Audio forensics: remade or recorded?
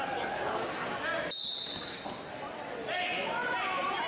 recorded